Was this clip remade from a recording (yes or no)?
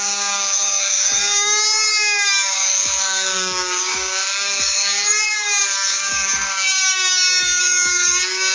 yes